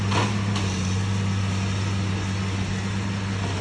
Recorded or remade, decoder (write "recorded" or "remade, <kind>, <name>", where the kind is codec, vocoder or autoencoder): recorded